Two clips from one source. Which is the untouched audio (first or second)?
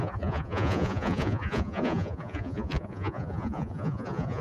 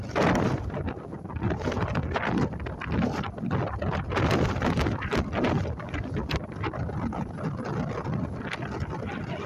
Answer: second